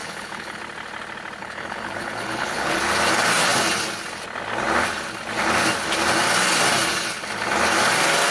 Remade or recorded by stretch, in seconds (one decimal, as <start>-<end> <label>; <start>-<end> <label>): 0.0-0.6 remade; 0.6-1.4 recorded; 1.4-2.8 remade; 2.8-8.3 recorded